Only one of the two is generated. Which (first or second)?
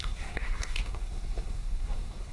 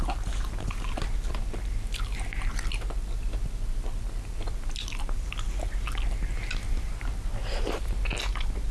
first